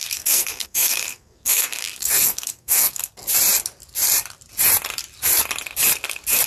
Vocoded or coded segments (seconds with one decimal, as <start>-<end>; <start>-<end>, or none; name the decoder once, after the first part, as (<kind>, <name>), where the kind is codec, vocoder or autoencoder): 0.0-3.1 (codec, SNAC)

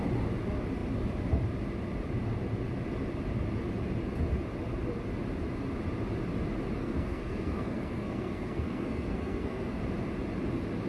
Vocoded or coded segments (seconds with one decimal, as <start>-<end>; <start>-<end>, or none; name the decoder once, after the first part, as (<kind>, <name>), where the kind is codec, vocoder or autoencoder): 6.8-9.8 (codec, SNAC)